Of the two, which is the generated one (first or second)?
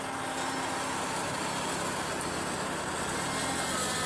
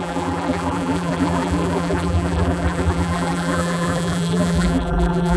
second